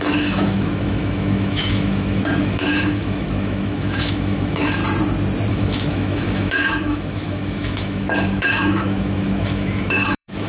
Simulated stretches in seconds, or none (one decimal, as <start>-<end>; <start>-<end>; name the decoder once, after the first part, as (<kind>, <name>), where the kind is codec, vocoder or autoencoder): 0.0-4.8 (autoencoder, DAC-VAE); 5.5-10.5